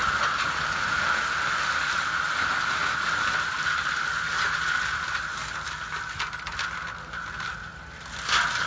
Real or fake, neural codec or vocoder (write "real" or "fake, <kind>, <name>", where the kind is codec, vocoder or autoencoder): real